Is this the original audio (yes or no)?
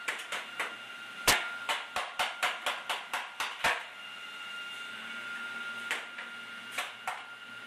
yes